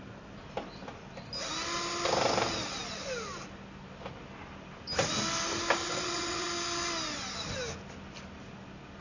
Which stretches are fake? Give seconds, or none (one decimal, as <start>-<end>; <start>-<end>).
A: 5.8-6.5